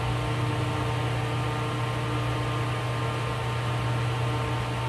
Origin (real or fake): real